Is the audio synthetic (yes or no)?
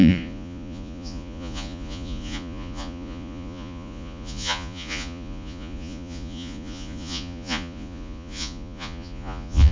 yes